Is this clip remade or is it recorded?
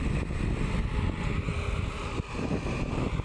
recorded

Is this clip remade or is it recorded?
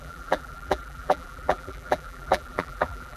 remade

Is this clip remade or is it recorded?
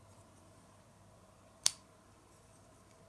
remade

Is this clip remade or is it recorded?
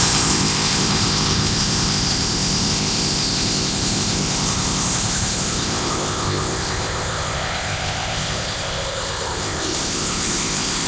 remade